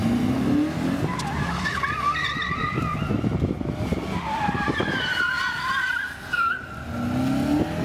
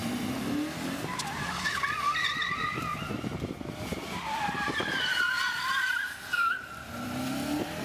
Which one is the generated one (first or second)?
second